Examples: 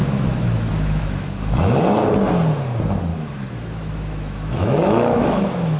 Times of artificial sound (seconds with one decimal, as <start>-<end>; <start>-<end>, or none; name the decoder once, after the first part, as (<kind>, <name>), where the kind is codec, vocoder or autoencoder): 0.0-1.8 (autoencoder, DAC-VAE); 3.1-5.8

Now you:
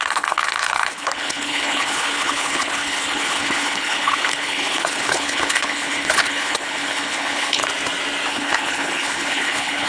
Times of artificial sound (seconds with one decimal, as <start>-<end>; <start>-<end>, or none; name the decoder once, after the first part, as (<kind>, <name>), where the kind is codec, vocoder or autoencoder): 0.0-7.6 (codec, HILCodec); 8.3-9.9

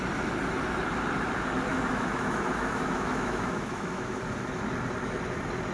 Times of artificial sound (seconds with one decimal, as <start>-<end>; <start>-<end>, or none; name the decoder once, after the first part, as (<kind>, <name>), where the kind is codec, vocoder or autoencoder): 1.7-4.2 (autoencoder, DAC-VAE)

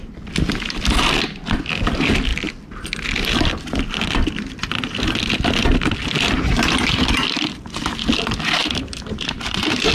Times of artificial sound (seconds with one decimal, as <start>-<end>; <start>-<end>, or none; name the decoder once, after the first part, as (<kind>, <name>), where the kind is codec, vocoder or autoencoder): 8.6-9.9 (vocoder, BigVGAN v2)